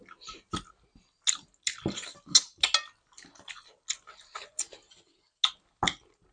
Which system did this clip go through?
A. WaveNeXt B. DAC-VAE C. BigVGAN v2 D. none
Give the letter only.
D